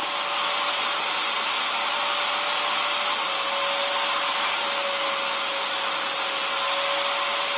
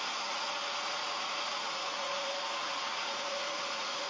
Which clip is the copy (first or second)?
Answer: second